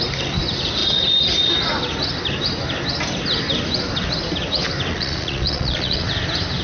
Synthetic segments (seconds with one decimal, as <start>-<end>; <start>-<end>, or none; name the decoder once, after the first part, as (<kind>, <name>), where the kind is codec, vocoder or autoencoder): 4.9-6.1 (vocoder, Vocos)